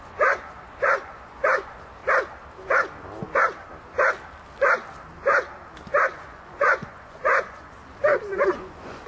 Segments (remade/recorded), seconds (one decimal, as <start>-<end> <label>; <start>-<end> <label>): 0.0-2.0 remade; 2.0-6.0 recorded; 6.0-7.8 remade; 7.8-8.4 recorded; 8.4-9.1 remade